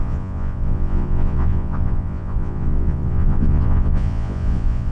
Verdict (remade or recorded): remade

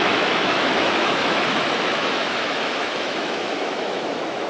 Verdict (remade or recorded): remade